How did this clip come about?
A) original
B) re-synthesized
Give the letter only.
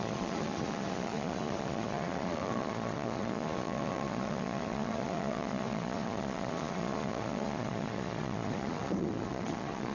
B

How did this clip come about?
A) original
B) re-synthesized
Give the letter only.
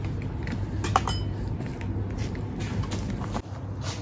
A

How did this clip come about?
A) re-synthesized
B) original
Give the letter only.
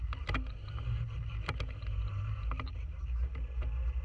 B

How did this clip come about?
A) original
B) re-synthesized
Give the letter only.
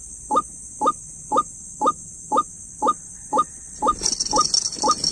A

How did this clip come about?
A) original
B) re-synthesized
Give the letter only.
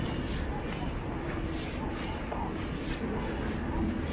A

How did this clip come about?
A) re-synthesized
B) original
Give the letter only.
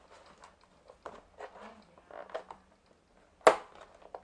B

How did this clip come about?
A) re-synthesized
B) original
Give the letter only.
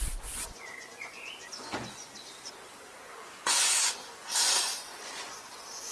A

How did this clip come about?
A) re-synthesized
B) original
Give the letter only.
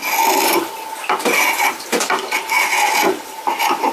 B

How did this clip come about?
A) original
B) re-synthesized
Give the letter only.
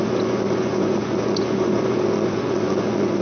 B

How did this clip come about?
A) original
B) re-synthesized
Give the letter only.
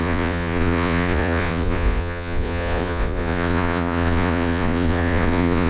B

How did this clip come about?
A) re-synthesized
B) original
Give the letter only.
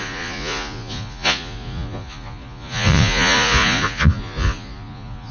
A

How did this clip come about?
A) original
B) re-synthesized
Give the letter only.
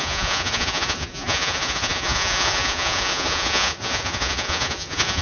B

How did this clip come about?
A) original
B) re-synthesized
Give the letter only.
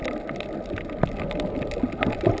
A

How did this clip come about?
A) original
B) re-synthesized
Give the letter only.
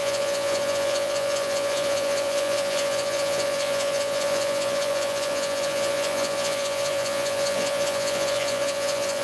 B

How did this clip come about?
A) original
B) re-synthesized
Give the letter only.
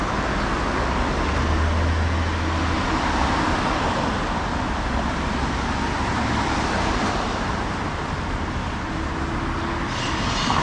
A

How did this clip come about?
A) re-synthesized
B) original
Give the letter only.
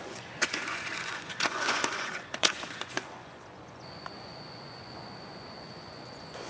A